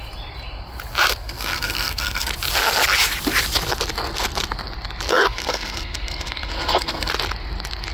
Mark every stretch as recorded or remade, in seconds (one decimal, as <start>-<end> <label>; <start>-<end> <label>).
0.0-1.2 recorded; 1.2-2.3 remade; 2.3-5.1 recorded; 5.1-7.1 remade; 7.1-7.9 recorded